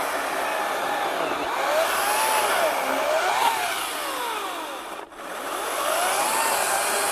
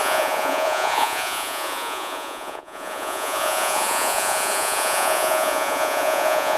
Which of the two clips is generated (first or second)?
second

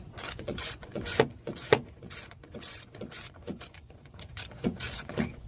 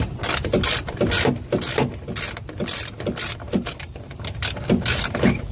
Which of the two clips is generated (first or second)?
first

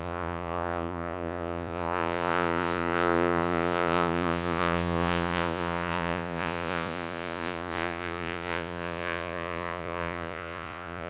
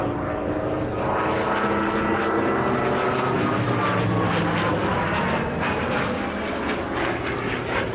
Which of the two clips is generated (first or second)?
first